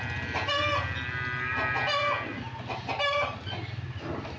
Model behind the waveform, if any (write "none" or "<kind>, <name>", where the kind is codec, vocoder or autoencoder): none